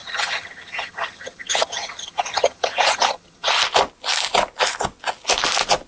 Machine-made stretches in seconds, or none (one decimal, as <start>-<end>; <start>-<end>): 0.0-3.5